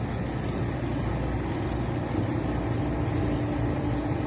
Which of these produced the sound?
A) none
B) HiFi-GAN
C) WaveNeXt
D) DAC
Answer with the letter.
A